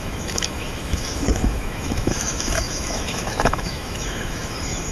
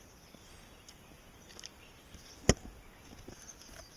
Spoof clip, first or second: first